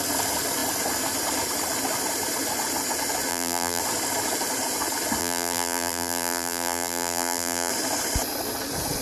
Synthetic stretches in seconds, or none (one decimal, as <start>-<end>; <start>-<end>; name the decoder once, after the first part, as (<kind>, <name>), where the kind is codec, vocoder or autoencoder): 3.3-3.8 (vocoder, BigVGAN v2); 5.2-7.7